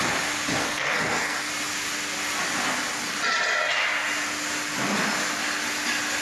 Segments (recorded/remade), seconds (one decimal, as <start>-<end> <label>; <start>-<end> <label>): 0.0-0.6 recorded; 0.6-1.5 remade; 1.5-6.2 recorded